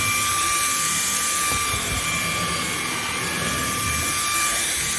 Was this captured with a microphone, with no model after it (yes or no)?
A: yes